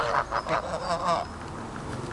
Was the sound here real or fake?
real